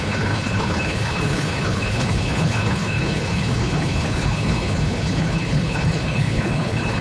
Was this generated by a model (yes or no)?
yes